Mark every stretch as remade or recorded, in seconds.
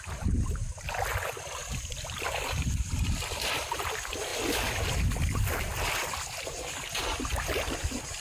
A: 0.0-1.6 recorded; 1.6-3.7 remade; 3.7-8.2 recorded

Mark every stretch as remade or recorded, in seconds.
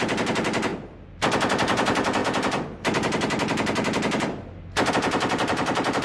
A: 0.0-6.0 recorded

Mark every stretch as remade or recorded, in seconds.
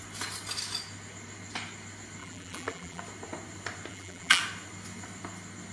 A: 0.0-2.2 recorded; 2.2-3.0 remade; 3.0-3.9 recorded; 3.9-4.4 remade; 4.4-5.7 recorded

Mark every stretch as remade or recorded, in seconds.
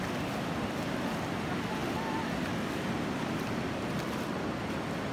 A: 0.0-5.1 recorded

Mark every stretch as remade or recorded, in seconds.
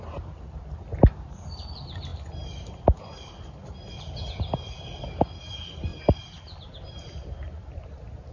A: 0.0-2.1 recorded; 2.1-3.3 remade; 3.3-8.3 recorded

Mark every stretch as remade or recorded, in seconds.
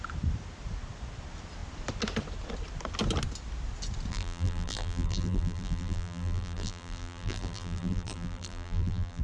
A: 0.0-4.1 recorded; 4.1-9.2 remade